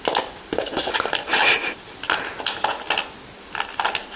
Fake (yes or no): no